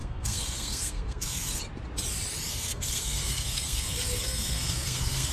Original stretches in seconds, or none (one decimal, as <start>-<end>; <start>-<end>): 1.6-2.5